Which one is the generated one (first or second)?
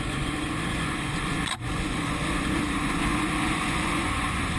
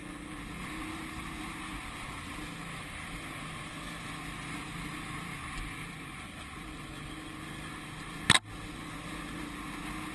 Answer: first